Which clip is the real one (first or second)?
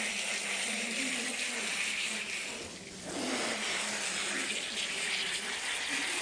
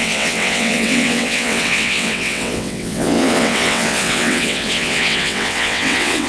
first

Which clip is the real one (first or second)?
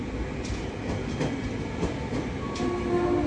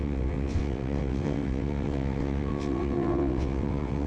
first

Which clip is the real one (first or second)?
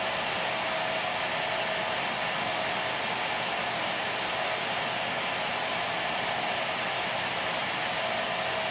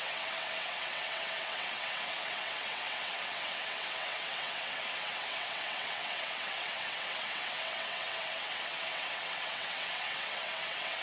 first